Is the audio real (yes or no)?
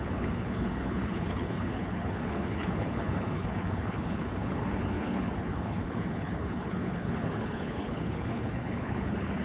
no